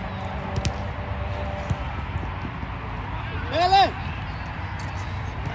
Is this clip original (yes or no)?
yes